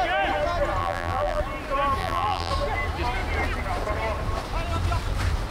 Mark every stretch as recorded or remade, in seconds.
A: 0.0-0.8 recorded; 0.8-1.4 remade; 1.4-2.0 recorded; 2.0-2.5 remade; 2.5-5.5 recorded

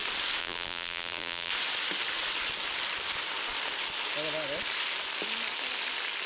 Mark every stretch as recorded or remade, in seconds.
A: 0.0-0.4 recorded; 0.4-1.5 remade; 1.5-6.3 recorded

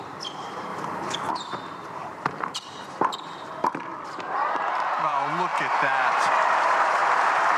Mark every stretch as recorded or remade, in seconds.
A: 0.0-0.7 remade; 0.7-1.3 recorded; 1.3-3.9 remade; 3.9-4.5 recorded; 4.5-7.6 remade

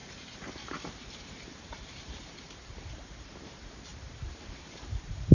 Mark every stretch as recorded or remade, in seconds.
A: 0.0-3.9 remade; 3.9-4.6 recorded; 4.6-5.3 remade

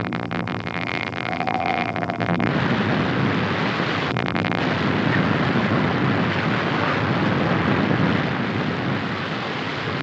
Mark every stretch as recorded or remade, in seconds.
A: 0.0-2.5 remade; 2.5-4.1 recorded; 4.1-4.6 remade; 4.6-10.0 recorded

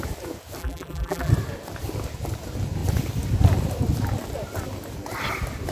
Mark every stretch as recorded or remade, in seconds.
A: 0.0-0.6 recorded; 0.6-1.3 remade; 1.3-5.7 recorded